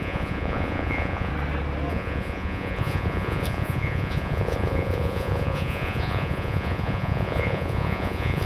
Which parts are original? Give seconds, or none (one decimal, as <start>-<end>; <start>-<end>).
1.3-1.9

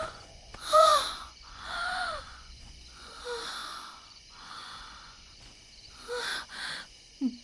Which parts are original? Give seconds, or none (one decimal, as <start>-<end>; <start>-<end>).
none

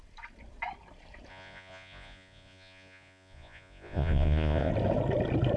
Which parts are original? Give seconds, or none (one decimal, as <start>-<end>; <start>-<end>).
0.0-1.3; 4.7-5.6

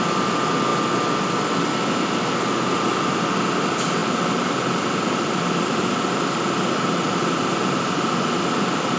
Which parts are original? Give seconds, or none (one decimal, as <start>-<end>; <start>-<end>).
0.0-9.0

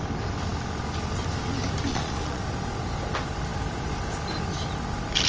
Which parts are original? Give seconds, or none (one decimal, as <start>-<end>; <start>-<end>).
0.0-1.9; 2.4-5.3

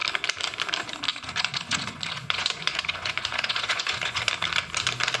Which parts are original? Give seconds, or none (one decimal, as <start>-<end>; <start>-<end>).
0.0-1.1; 4.2-5.2